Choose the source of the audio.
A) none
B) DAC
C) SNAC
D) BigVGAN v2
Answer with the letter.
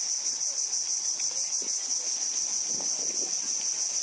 A